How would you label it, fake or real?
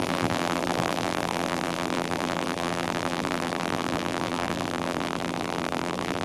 fake